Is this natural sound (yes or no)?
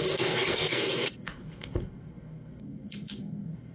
no